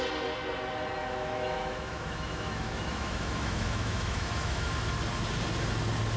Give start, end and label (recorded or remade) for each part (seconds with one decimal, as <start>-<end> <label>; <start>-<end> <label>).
0.0-1.0 recorded; 1.0-4.7 remade; 4.7-6.2 recorded